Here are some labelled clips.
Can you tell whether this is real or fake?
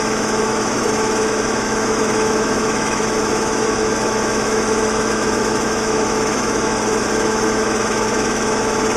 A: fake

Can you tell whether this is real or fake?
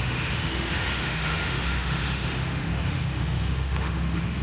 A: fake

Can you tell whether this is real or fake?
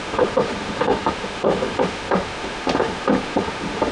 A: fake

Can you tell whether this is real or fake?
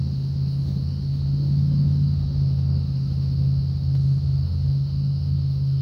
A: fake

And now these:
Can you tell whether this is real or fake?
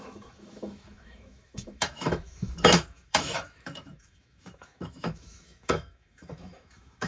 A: fake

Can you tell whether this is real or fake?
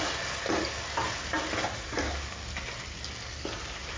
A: real